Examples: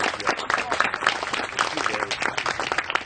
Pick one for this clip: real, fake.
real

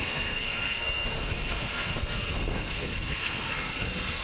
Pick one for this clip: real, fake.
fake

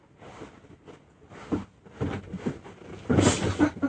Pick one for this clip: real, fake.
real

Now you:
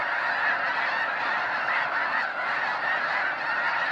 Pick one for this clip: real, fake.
real